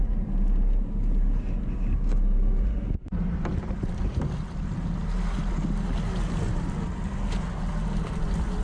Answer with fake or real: real